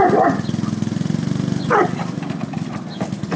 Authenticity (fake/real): real